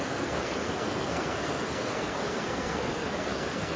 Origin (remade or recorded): remade